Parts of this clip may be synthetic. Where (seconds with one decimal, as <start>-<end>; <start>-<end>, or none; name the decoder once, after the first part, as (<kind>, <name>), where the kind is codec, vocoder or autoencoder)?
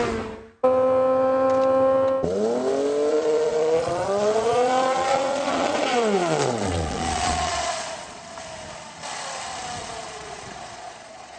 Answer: 3.1-8.2 (vocoder, Vocos); 9.8-11.4